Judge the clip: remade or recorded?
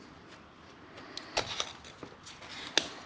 recorded